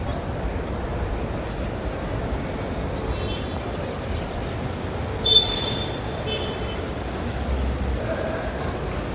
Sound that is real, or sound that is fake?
real